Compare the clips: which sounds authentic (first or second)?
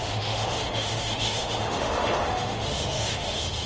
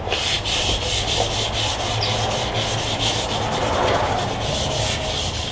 second